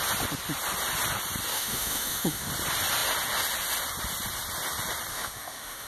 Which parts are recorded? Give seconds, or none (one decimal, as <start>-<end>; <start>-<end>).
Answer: 0.0-1.5; 2.5-5.1